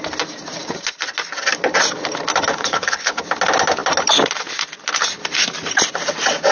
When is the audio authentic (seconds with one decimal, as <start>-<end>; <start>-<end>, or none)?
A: 0.0-2.5; 3.2-6.5